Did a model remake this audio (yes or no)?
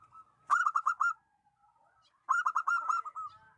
no